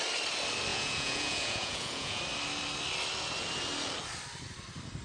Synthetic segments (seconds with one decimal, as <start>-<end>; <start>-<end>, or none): 0.7-2.2